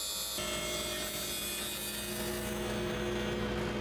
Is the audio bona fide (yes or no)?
yes